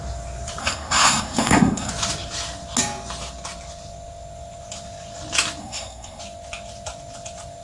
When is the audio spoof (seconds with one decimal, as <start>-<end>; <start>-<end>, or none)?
0.6-1.9; 5.6-6.2